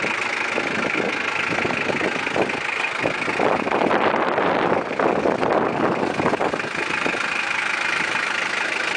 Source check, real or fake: real